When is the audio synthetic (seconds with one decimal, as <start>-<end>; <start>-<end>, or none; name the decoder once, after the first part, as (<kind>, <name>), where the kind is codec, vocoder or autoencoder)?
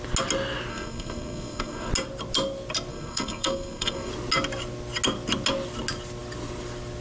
0.7-1.9 (codec, SNAC); 2.9-4.1